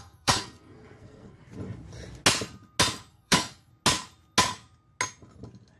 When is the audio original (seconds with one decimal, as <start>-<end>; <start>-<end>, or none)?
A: 1.4-3.1; 3.7-5.8